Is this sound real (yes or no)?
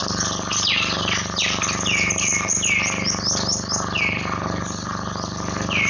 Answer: yes